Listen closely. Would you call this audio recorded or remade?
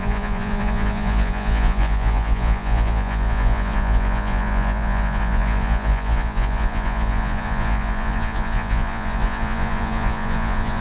remade